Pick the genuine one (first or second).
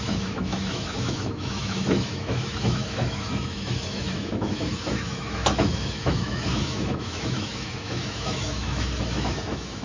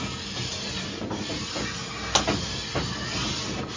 second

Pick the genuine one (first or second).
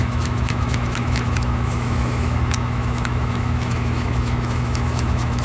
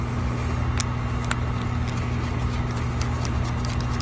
second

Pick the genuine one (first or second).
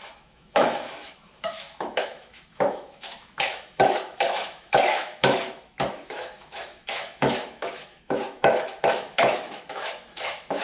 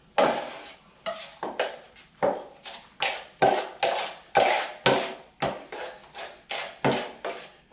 second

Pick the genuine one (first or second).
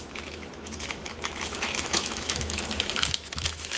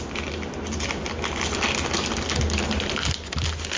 second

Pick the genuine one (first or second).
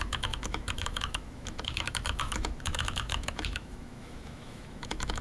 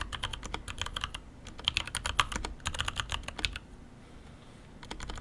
second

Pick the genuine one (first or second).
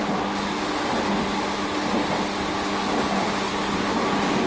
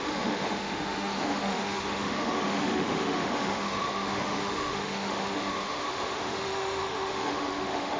first